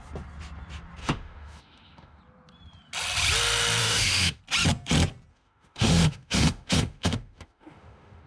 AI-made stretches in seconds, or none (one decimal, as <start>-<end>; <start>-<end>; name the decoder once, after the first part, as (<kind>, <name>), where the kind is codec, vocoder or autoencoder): 1.0-2.2 (autoencoder, DAC-VAE); 3.8-4.4; 5.3-8.3